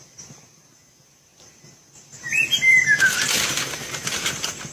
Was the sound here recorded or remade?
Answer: recorded